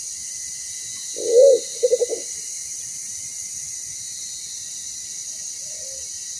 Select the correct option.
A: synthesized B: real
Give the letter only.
B